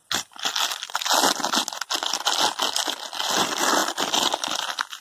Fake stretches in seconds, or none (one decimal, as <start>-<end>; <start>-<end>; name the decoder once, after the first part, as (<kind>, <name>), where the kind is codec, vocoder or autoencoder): 0.0-0.9 (vocoder, BigVGAN v2)